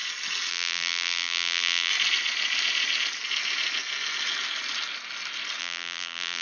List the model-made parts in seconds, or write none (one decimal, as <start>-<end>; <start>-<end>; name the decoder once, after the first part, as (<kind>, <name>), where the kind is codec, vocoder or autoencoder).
0.5-1.9 (vocoder, BigVGAN v2); 5.6-6.4